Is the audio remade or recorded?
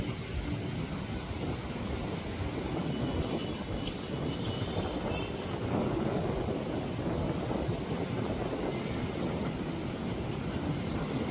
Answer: recorded